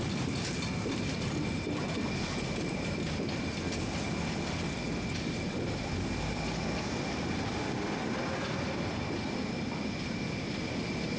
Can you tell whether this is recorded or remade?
recorded